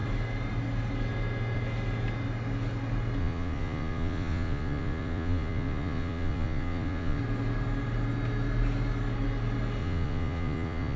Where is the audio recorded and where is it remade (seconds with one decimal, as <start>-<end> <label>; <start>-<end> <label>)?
0.0-3.2 recorded; 3.2-7.2 remade; 7.2-9.8 recorded; 9.8-11.0 remade